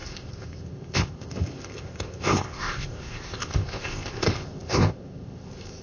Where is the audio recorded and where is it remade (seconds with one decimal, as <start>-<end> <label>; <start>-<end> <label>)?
0.0-5.8 remade

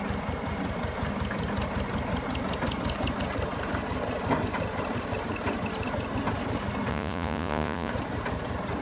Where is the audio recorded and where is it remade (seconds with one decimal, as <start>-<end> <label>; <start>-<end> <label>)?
0.0-6.9 recorded; 6.9-7.9 remade; 7.9-8.8 recorded

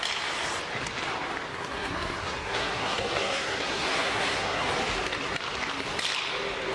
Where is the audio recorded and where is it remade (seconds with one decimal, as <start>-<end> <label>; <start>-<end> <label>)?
0.0-1.5 recorded; 1.5-4.7 remade; 4.7-6.7 recorded

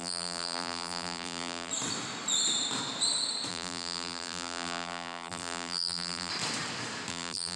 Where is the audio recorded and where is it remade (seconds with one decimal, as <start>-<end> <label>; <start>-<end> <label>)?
0.0-1.7 remade; 1.7-3.5 recorded; 3.5-6.3 remade; 6.3-7.1 recorded; 7.1-7.6 remade

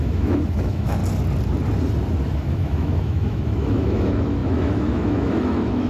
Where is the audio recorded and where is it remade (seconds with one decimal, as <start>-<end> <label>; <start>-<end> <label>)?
0.0-1.0 remade; 1.0-2.3 recorded; 2.3-5.9 remade

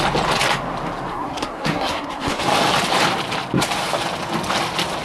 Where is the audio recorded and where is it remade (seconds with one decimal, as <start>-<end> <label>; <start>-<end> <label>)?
0.0-1.1 recorded; 1.1-2.4 remade; 2.4-5.0 recorded

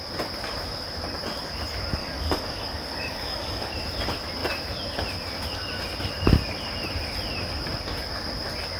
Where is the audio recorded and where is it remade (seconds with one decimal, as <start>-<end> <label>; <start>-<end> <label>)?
0.0-2.0 recorded; 2.0-3.7 remade; 3.7-8.8 recorded